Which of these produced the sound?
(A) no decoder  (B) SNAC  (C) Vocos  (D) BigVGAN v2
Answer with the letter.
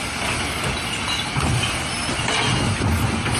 A